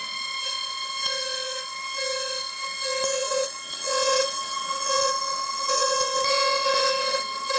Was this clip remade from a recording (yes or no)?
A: yes